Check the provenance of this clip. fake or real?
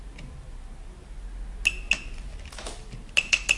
real